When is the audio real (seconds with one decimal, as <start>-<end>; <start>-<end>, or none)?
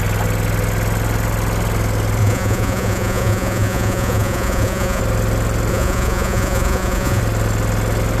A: 0.0-2.2; 5.0-5.7; 7.2-8.2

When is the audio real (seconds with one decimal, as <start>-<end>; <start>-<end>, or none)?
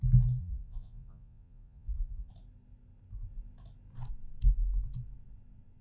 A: 0.0-0.4; 2.3-5.8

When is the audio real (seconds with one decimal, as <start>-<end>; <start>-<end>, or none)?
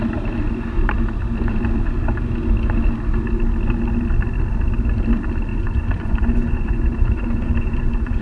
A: 0.0-5.5